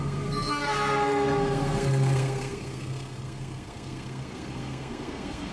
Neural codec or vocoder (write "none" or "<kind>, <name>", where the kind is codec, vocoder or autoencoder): codec, SNAC